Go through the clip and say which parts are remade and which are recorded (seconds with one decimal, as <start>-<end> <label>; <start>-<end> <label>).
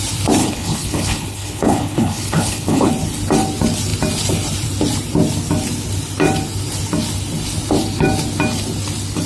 0.0-0.4 recorded; 0.4-2.9 remade; 2.9-9.3 recorded